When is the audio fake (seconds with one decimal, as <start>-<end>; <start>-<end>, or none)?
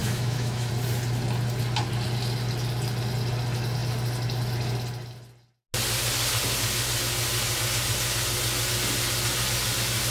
0.0-0.7